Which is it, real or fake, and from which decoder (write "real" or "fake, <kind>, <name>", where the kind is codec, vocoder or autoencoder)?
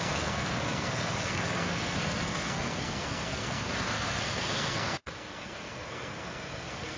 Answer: fake, codec, SNAC